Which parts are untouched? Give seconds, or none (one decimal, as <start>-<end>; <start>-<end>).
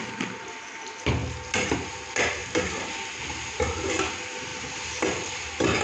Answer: 0.0-2.4; 3.2-4.5